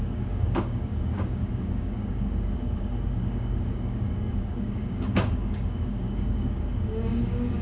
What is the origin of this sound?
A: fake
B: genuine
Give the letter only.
A